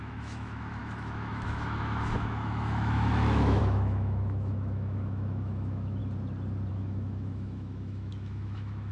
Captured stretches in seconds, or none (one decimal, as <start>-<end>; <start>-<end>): 6.0-6.7